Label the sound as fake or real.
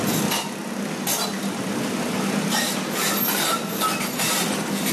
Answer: real